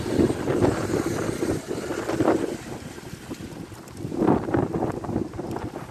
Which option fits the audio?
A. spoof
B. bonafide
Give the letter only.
B